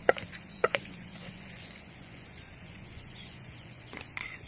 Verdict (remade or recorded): remade